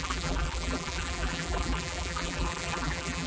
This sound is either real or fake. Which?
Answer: fake